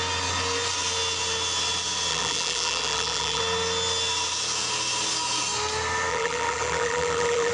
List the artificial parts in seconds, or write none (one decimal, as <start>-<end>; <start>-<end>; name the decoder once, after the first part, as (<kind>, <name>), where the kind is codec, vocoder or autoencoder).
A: 2.1-3.4 (vocoder, BigVGAN v2); 6.1-7.5